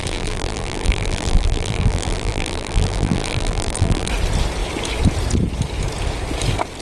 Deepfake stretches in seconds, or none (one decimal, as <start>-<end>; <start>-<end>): 0.0-4.1